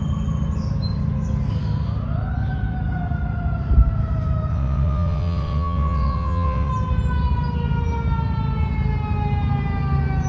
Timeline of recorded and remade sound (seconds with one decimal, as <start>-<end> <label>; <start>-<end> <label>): 0.0-4.5 recorded; 4.5-6.7 remade; 6.7-10.3 recorded